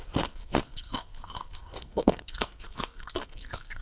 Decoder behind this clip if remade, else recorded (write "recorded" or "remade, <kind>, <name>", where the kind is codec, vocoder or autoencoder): remade, codec, SNAC